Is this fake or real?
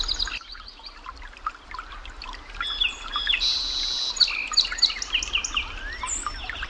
real